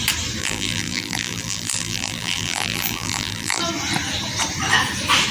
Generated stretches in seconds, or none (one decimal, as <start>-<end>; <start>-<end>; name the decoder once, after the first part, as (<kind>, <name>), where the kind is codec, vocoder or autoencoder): 0.4-3.6 (vocoder, BigVGAN v2)